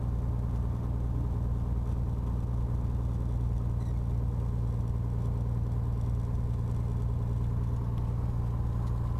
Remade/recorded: recorded